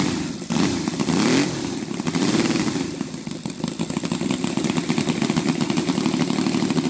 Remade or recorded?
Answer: remade